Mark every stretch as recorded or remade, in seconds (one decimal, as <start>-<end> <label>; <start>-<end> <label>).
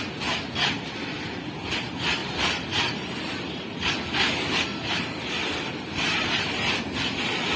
0.0-2.2 recorded; 2.2-3.9 remade; 3.9-4.7 recorded; 4.7-6.8 remade; 6.8-7.6 recorded